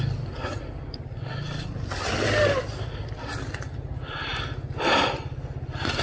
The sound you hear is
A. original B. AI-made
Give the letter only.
A